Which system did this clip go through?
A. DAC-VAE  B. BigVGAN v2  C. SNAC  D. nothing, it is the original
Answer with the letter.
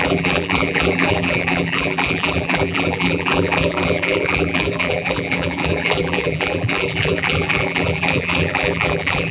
B